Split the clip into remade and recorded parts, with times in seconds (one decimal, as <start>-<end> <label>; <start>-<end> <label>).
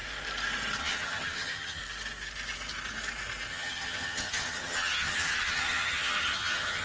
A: 0.0-0.8 recorded; 0.8-1.8 remade; 1.8-3.5 recorded; 3.5-6.8 remade